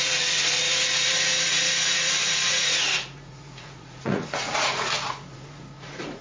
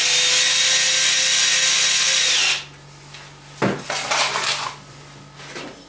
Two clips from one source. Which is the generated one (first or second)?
first